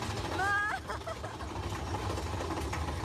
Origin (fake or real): real